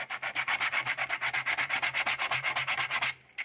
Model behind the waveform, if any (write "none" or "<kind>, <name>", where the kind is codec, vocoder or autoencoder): none